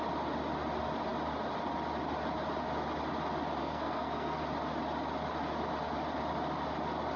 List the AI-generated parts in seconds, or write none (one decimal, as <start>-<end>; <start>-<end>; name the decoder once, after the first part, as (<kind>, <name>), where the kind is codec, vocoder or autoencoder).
3.6-4.4 (codec, SNAC)